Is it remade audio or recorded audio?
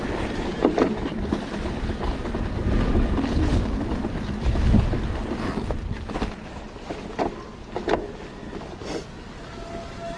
recorded